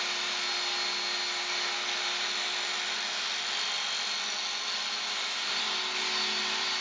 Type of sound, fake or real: real